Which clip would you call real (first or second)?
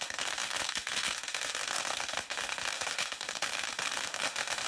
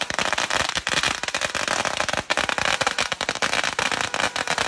second